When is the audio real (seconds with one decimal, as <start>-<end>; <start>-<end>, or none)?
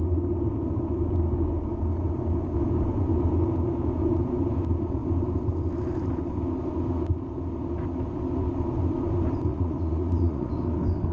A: 0.0-9.5; 10.5-11.1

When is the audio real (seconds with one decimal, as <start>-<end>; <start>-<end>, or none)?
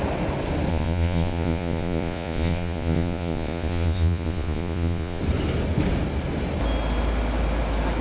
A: 0.0-0.7; 5.2-8.0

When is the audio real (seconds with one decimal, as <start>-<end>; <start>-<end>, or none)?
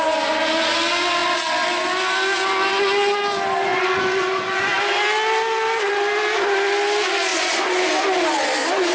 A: 0.0-3.7; 4.8-7.3; 7.9-8.9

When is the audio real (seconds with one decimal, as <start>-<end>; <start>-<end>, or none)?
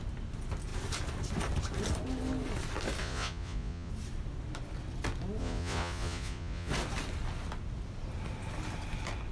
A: 0.0-3.0; 3.9-5.4; 6.7-9.3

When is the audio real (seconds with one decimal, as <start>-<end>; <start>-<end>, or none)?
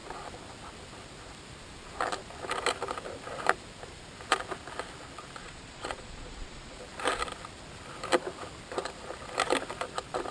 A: 0.0-5.4; 6.8-10.3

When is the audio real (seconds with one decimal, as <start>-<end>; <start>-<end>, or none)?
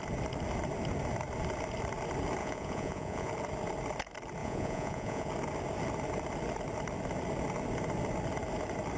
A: 0.0-2.4; 3.3-4.4; 5.3-9.0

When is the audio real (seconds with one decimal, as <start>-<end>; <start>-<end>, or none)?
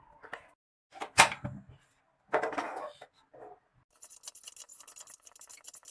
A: 0.0-5.9